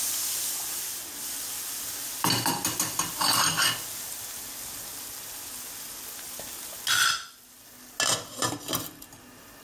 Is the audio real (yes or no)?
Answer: yes